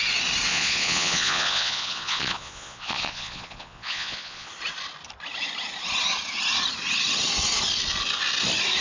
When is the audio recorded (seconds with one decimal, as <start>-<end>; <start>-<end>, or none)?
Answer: 0.0-0.5; 4.5-8.8